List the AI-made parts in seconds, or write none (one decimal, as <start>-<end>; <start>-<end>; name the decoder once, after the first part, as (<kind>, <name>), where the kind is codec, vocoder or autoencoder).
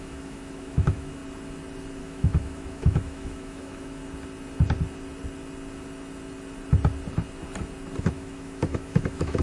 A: 0.0-1.2 (autoencoder, DAC-VAE); 2.0-4.0; 8.0-9.4